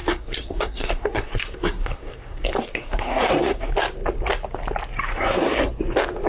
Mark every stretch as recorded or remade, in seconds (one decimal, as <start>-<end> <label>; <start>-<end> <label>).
0.0-3.7 remade; 3.7-5.0 recorded; 5.0-5.7 remade; 5.7-6.3 recorded